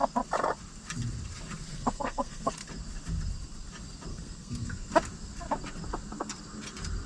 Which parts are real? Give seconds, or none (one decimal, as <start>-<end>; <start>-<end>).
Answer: 0.0-1.7; 2.5-4.1; 4.9-7.1

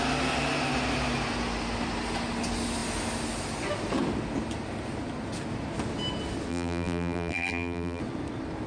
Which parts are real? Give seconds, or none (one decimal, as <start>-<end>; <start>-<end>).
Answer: 0.0-6.5; 8.0-8.7

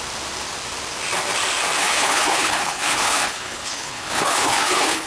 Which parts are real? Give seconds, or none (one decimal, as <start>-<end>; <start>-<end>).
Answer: 0.0-1.8

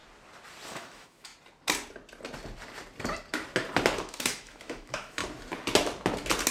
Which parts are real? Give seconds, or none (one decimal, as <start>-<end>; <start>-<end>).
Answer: 0.0-0.7; 1.3-4.0; 5.2-6.5

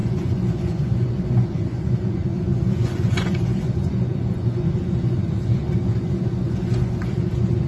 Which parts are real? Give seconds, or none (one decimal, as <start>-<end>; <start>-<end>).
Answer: none

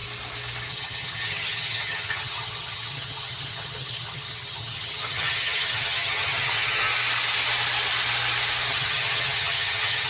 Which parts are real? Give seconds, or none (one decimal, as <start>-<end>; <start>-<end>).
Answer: 0.0-0.7; 6.9-8.7